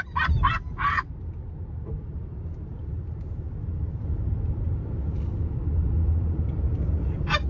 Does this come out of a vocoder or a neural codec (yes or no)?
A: no